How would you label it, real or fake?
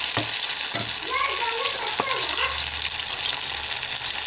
real